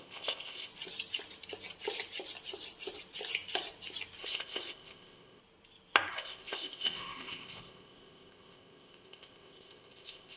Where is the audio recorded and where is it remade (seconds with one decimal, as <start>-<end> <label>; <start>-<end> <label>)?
0.0-0.7 remade; 0.7-4.2 recorded; 4.2-5.4 remade; 5.4-6.1 recorded; 6.1-10.4 remade

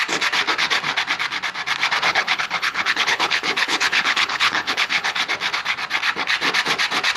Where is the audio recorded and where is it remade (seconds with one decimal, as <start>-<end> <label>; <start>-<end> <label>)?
0.0-2.1 recorded; 2.1-5.2 remade; 5.2-7.2 recorded

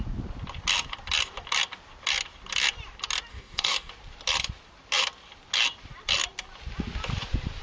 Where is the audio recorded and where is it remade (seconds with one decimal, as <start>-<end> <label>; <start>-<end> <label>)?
0.0-3.3 recorded; 3.3-3.9 remade; 3.9-7.6 recorded